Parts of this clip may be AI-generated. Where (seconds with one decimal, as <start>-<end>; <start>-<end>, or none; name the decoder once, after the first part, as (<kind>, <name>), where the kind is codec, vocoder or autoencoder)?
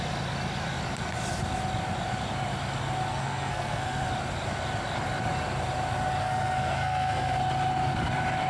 3.1-4.1 (codec, SNAC); 6.2-7.4